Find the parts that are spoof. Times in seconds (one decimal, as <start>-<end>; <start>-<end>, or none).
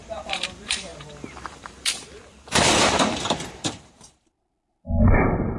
0.0-5.6